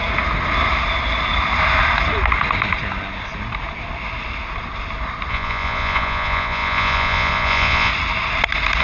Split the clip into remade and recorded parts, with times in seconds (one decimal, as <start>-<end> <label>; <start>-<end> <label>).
0.0-5.3 recorded; 5.3-7.9 remade; 7.9-8.8 recorded